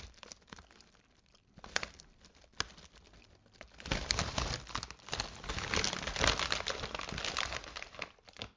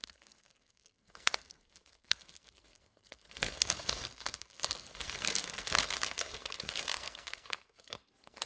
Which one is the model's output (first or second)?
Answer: second